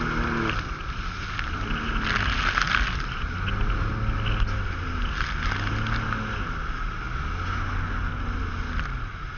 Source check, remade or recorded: recorded